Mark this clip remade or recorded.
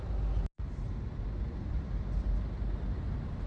recorded